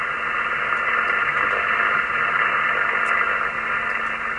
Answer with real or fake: real